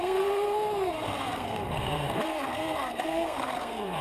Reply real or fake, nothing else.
fake